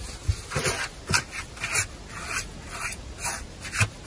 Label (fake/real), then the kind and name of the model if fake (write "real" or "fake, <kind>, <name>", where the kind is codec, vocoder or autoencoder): real